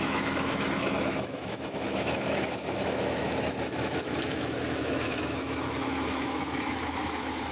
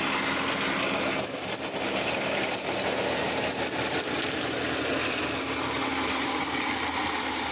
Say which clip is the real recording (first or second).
second